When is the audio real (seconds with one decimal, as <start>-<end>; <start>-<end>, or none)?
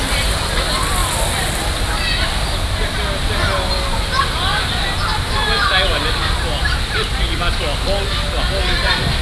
0.0-9.2